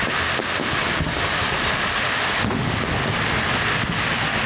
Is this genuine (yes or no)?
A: yes